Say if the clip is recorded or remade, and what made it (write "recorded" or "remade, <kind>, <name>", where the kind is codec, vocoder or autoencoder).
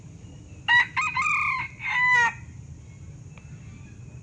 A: recorded